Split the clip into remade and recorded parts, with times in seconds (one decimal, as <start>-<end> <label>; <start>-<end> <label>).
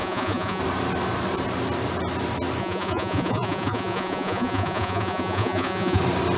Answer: 0.0-0.6 remade; 0.6-2.6 recorded; 2.6-6.0 remade; 6.0-6.4 recorded